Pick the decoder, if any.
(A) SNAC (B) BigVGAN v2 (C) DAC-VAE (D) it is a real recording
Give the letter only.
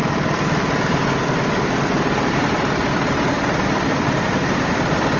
B